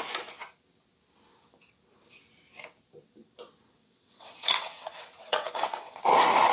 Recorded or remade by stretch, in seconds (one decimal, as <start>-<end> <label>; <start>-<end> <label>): 0.0-3.8 recorded; 3.8-6.0 remade; 6.0-6.5 recorded